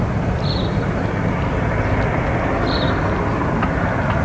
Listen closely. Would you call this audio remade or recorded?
recorded